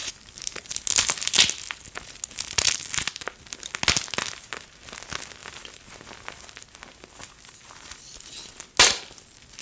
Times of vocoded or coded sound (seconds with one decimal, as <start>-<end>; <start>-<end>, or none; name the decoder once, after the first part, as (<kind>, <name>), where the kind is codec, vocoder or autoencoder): none